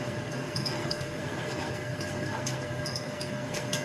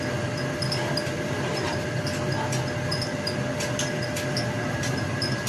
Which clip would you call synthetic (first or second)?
first